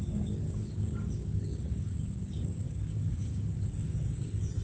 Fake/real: fake